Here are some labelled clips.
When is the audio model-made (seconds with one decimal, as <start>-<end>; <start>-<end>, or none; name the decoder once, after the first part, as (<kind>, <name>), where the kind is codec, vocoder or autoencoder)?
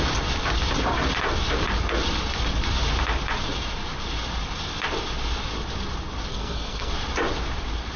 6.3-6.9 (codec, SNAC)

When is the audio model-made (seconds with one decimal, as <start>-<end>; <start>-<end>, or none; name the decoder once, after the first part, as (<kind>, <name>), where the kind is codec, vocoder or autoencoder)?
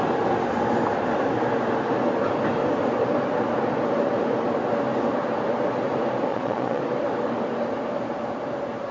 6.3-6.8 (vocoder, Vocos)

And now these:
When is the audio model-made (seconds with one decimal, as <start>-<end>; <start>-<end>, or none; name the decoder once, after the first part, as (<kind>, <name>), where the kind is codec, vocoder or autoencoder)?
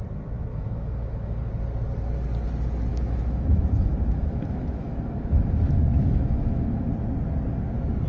0.5-1.5 (autoencoder, DAC-VAE); 2.9-6.9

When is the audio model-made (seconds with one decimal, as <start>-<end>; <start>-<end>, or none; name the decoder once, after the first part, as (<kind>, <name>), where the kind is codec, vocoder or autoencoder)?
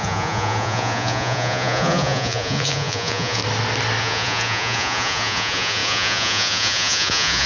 0.0-3.4 (vocoder, Vocos); 4.0-7.5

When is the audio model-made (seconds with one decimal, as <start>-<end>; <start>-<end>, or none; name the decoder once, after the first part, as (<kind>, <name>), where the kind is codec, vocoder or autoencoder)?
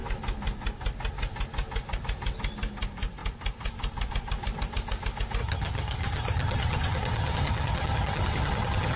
5.4-9.0 (vocoder, HiFi-GAN)